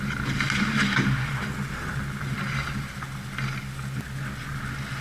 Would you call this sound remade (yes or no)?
no